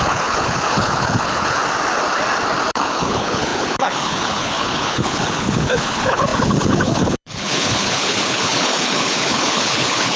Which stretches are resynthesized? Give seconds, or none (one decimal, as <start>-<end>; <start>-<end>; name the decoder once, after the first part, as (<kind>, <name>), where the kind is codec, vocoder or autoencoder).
0.0-1.6 (codec, HILCodec); 2.7-10.2